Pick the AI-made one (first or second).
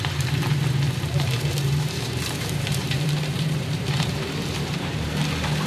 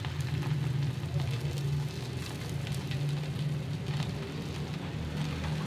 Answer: first